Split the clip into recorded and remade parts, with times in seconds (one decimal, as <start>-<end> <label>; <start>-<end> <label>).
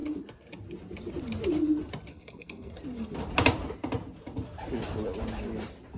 0.0-2.1 recorded; 2.1-2.7 remade; 2.7-6.0 recorded